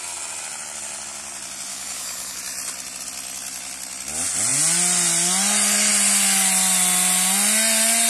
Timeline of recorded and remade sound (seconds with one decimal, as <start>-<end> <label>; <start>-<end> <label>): 0.0-1.7 recorded; 1.7-2.4 remade; 2.4-8.1 recorded